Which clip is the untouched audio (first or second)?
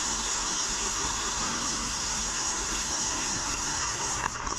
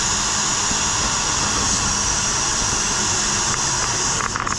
second